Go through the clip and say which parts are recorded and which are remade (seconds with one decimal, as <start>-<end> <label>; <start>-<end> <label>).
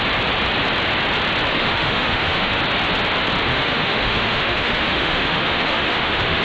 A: 0.0-1.5 recorded; 1.5-2.6 remade; 2.6-3.5 recorded; 3.5-6.4 remade